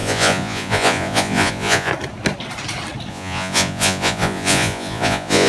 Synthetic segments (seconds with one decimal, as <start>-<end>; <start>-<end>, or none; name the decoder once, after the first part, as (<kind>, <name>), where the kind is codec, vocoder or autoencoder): 0.0-1.9 (vocoder, Vocos); 3.1-5.5